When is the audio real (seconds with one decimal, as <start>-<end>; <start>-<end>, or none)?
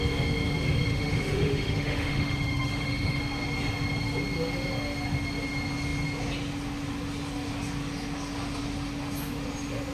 0.0-0.9; 3.2-9.9